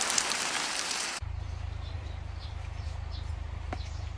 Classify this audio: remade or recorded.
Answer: remade